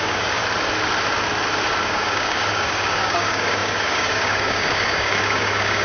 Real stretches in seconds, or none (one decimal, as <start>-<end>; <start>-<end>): 0.4-1.8